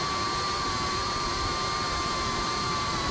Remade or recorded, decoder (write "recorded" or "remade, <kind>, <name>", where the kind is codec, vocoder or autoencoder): remade, vocoder, BigVGAN v2